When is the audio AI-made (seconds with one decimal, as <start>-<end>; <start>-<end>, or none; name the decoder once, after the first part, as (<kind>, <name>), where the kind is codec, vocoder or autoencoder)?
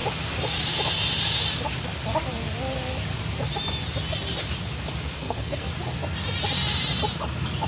5.2-5.7 (codec, SNAC)